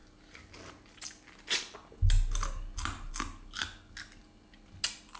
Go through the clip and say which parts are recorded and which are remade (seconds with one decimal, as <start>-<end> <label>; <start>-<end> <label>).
0.0-5.2 recorded